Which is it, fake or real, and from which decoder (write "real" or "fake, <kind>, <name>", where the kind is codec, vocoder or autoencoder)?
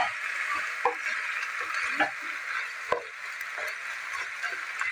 real